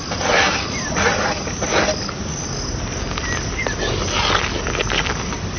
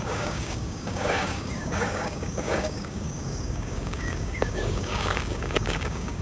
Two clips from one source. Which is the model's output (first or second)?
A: second